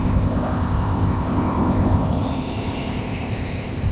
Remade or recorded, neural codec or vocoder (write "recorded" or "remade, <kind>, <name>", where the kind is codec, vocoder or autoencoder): remade, codec, ZipCodec